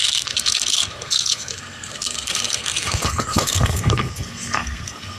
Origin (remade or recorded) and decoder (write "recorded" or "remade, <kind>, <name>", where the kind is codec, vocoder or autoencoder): remade, codec, SNAC